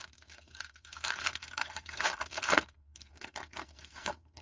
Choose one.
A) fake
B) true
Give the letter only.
A